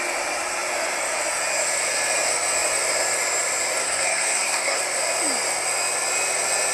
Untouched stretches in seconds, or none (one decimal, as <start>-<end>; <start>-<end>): 0.0-3.8; 4.8-6.7